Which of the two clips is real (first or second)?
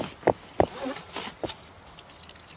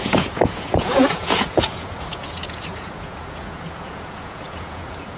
first